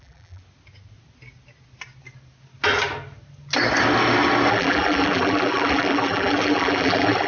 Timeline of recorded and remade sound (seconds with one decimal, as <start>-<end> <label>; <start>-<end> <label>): 0.0-0.4 remade; 0.4-4.5 recorded; 4.5-7.3 remade